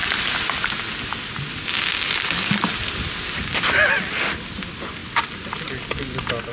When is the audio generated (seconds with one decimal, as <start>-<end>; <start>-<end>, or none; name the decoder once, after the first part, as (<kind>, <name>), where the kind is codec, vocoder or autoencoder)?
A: 5.0-5.6 (vocoder, BigVGAN v2)